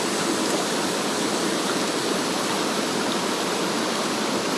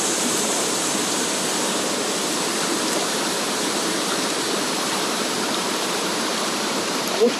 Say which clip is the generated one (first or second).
second